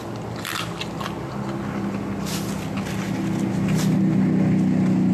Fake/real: real